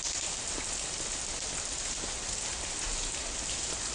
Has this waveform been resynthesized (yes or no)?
no